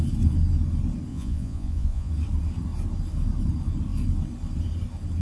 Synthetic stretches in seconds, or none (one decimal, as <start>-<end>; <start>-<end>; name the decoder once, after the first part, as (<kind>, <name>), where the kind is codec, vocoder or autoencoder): 1.1-2.1 (vocoder, Vocos)